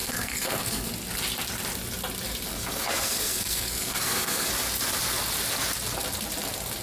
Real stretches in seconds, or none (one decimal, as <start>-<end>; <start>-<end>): 0.9-2.5; 4.5-6.8